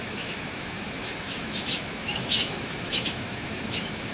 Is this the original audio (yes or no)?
no